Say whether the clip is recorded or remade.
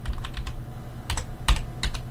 recorded